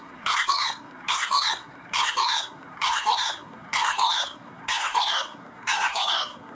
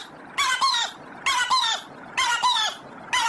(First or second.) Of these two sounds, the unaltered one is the second